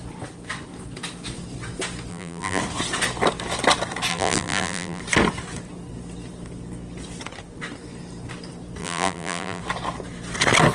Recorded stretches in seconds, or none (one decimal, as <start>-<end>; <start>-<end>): 0.0-2.1; 2.6-4.1; 5.0-8.8; 9.6-10.7